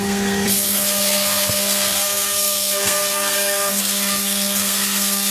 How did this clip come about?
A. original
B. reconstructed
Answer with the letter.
B